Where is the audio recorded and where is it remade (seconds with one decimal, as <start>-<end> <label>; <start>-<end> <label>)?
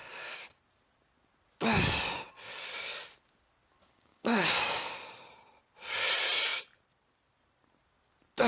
0.0-0.6 remade; 0.6-3.8 recorded; 3.8-4.9 remade; 4.9-8.5 recorded